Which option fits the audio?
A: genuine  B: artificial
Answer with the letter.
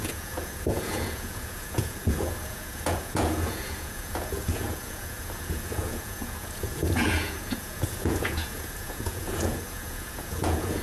B